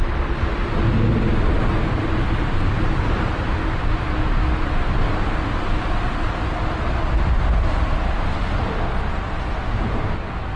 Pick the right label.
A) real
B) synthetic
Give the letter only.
A